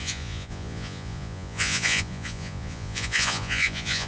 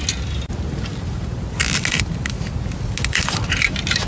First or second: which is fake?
first